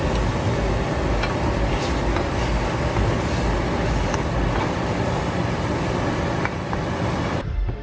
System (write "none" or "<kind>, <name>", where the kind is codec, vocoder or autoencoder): none